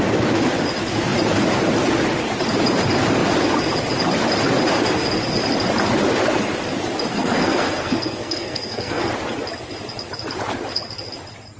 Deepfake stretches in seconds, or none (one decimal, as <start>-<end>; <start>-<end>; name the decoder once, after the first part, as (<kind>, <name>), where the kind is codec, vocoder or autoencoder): 7.1-9.1 (codec, SNAC)